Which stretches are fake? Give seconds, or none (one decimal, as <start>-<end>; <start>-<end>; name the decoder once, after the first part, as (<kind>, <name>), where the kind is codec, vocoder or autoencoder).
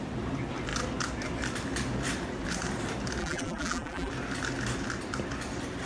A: 3.2-4.1 (vocoder, BigVGAN v2)